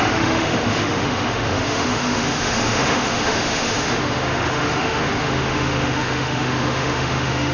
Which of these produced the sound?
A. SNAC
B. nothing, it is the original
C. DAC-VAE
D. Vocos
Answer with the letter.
C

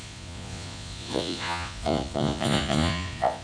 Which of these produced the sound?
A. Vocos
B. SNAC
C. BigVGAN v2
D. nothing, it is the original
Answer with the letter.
A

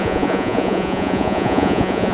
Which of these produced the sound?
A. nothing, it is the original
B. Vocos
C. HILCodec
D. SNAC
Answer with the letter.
B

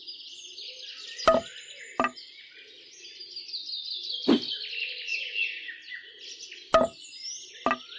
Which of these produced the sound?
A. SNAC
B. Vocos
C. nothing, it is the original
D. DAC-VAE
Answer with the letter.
C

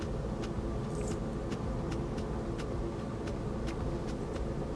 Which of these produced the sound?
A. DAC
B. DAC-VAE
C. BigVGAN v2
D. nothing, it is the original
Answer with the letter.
D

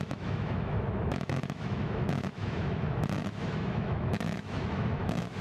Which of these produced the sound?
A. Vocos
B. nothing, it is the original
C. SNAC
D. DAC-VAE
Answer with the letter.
D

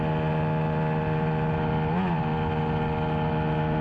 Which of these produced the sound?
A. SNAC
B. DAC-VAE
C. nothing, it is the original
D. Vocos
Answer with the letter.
C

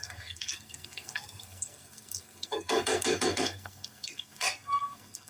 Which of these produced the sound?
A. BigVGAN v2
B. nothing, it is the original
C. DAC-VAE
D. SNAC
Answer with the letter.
D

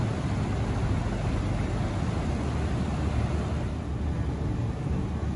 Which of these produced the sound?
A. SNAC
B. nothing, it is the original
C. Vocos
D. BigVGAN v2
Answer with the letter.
B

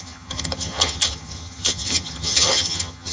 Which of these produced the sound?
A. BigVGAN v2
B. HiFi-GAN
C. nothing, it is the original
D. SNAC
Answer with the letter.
B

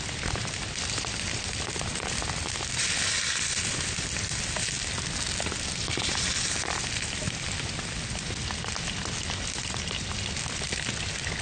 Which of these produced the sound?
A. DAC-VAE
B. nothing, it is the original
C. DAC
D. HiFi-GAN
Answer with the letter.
B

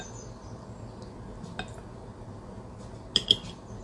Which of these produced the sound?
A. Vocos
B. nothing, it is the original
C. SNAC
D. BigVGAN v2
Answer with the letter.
B